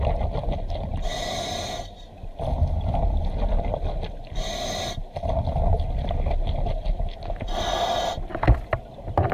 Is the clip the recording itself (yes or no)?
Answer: yes